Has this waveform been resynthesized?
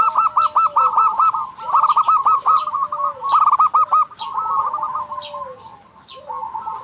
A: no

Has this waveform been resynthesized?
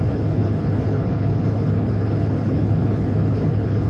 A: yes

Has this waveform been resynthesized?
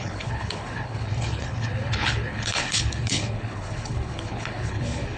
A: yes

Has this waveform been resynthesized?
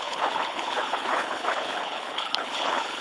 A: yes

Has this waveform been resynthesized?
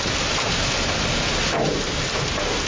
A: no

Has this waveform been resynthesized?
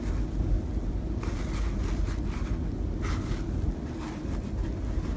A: no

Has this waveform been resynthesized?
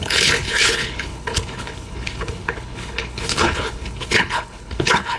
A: yes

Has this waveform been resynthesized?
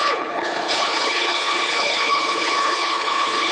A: yes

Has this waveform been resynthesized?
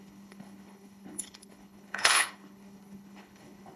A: yes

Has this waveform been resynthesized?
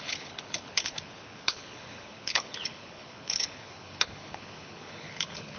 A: yes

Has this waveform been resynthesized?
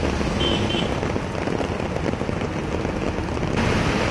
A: no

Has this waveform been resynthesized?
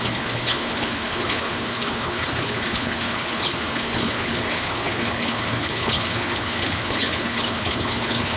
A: yes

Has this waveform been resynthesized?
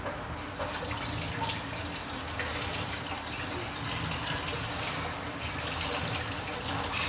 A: no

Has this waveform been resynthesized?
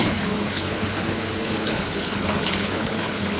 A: yes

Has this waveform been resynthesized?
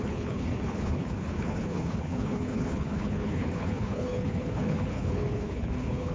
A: yes